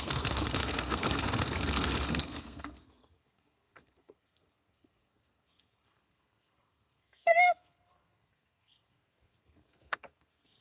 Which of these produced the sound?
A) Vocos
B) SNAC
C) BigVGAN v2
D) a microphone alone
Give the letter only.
B